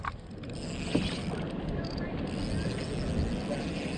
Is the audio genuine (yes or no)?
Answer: yes